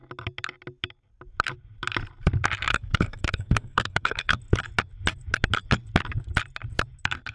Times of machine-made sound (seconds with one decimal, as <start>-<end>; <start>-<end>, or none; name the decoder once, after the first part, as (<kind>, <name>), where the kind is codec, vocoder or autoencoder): 2.7-4.4 (codec, SNAC)